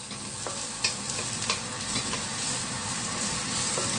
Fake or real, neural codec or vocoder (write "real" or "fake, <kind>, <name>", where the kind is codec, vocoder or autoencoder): real